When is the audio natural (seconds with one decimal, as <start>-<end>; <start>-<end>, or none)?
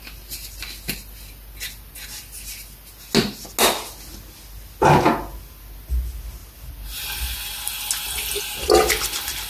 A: 0.0-9.5